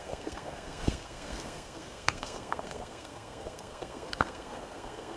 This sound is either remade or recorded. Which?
remade